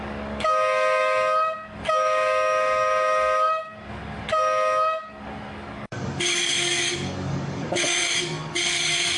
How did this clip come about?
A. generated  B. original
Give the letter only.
A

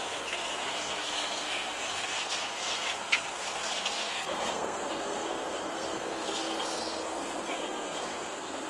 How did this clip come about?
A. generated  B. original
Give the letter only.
A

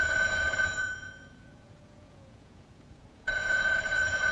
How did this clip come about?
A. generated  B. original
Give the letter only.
A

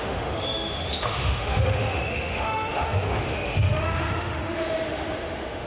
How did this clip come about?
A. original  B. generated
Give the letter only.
B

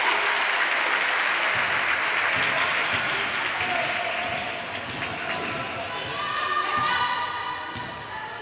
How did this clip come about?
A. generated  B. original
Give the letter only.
B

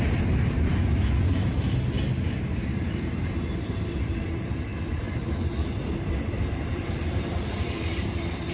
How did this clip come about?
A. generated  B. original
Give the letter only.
A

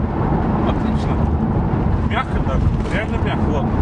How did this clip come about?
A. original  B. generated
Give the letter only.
A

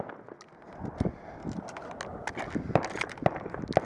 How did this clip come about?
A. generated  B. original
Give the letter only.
B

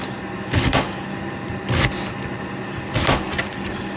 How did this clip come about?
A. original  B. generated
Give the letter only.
A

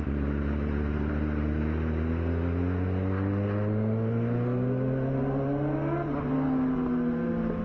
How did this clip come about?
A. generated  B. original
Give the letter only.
B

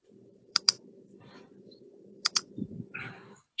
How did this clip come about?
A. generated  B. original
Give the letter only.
A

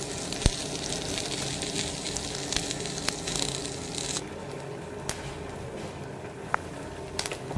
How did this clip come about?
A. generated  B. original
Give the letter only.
B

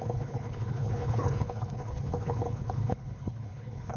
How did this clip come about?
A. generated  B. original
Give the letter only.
A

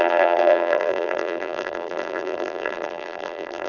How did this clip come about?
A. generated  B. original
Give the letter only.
A